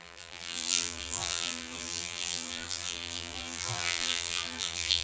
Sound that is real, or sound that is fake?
fake